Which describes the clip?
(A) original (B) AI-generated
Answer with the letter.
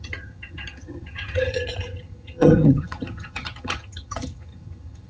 B